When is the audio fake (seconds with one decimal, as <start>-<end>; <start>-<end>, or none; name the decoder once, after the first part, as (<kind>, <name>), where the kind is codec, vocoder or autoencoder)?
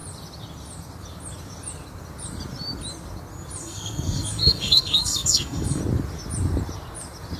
3.6-5.8 (codec, SNAC)